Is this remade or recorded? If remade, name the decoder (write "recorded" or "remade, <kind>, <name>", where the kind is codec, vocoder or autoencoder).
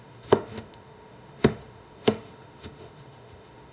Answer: remade, autoencoder, DAC-VAE